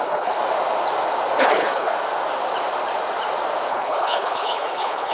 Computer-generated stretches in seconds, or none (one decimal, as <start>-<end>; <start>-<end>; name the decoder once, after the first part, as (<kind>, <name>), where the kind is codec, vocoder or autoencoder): 0.0-0.4 (codec, HILCodec); 1.4-1.9; 3.7-5.1

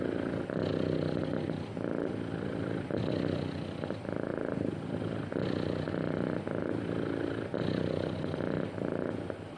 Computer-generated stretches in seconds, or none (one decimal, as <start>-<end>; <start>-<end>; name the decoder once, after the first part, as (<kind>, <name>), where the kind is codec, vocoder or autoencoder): none

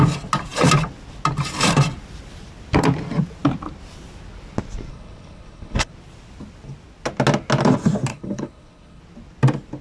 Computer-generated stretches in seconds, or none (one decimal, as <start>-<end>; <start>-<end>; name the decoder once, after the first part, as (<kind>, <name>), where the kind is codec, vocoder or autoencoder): 4.9-5.9 (codec, HILCodec); 8.1-9.0

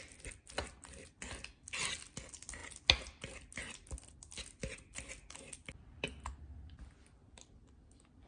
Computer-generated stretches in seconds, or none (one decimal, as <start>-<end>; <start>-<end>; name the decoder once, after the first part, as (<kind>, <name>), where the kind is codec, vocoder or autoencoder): none

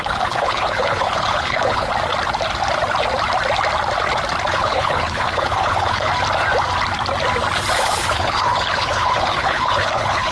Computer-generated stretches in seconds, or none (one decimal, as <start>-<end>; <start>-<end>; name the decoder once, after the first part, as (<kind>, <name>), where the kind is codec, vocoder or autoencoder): 0.0-1.9 (codec, HILCodec); 4.5-6.1; 7.7-10.3